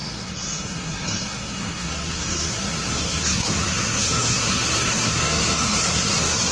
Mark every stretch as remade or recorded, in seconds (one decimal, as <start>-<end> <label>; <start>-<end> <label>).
0.0-6.5 remade